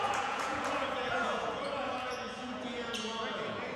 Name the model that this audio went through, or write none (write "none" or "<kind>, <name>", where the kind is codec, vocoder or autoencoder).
vocoder, Vocos